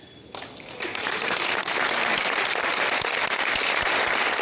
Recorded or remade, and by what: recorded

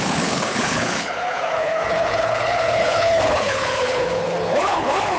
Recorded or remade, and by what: remade, codec, HILCodec